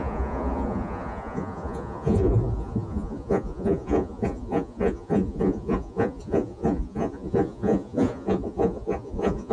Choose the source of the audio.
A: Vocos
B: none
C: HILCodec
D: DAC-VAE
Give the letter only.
A